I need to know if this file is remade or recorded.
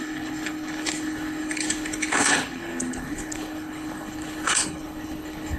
remade